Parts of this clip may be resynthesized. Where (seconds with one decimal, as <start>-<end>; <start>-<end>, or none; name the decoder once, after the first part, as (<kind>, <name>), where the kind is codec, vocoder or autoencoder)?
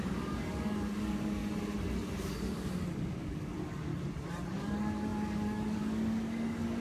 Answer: 0.0-1.4 (codec, DAC); 2.1-3.9; 4.5-6.8